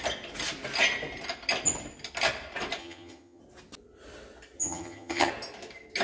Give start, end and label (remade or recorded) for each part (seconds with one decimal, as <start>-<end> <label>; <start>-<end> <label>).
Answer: 0.0-2.8 recorded; 2.8-3.4 remade; 3.4-4.6 recorded; 4.6-5.3 remade; 5.3-6.0 recorded